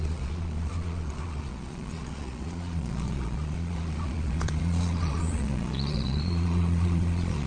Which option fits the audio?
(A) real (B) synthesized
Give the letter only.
B